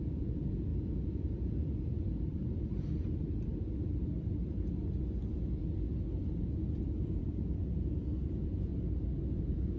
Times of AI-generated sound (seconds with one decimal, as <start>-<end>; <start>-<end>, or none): 0.0-2.3; 7.0-8.7; 9.3-9.8